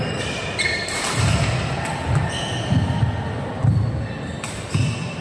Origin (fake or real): real